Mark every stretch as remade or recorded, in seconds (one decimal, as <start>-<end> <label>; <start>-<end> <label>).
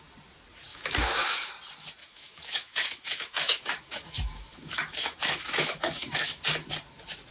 0.0-0.7 recorded; 0.7-1.5 remade; 1.5-2.0 recorded; 2.0-6.4 remade; 6.4-7.3 recorded